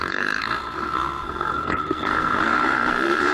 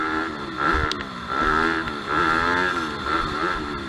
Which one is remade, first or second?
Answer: first